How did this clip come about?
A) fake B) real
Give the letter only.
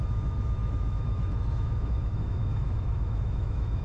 A